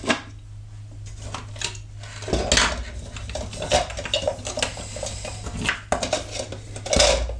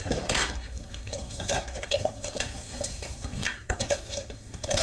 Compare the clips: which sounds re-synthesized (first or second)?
second